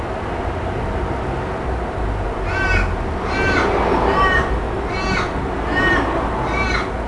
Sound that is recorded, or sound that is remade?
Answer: recorded